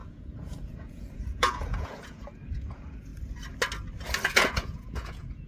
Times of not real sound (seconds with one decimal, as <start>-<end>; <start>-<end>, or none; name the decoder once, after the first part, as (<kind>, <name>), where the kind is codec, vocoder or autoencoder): 0.0-3.1 (vocoder, Vocos); 4.3-5.5

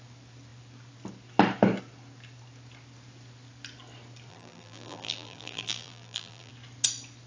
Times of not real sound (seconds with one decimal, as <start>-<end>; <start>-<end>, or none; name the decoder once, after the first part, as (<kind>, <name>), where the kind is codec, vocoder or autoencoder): 4.3-6.5 (vocoder, BigVGAN v2)

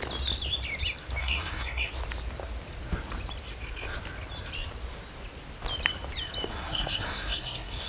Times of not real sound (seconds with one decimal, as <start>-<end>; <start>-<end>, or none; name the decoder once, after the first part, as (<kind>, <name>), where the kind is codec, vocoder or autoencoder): 1.2-1.9 (codec, SNAC); 6.5-7.9

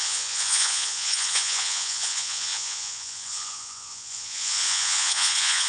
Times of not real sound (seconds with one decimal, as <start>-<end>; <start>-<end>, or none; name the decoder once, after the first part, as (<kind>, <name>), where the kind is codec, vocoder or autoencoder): 0.0-5.7 (vocoder, Vocos)

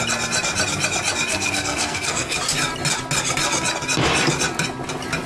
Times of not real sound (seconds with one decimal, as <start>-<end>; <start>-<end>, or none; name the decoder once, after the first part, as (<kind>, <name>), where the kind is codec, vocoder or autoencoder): 1.3-2.4 (codec, SNAC)

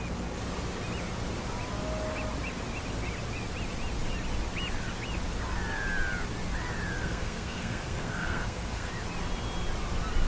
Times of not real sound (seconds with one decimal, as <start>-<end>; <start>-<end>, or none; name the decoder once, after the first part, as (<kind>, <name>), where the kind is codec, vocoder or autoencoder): 7.0-8.9 (codec, SNAC)

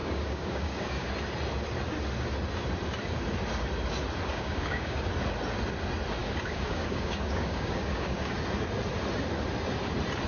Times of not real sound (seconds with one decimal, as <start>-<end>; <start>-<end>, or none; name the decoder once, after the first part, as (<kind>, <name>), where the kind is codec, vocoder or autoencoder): 0.0-1.1 (codec, DAC); 4.3-5.1; 6.2-8.3